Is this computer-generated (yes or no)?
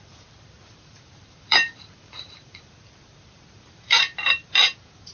yes